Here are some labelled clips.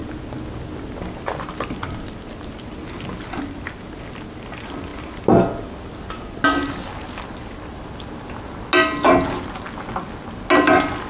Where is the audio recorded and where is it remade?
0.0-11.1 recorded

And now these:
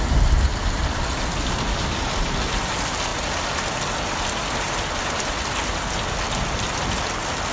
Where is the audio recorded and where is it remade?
0.0-7.5 recorded

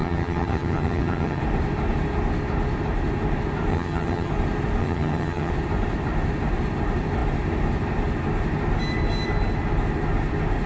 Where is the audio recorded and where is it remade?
0.0-1.4 remade; 1.4-3.7 recorded; 3.7-4.3 remade; 4.3-4.8 recorded; 4.8-5.5 remade; 5.5-10.7 recorded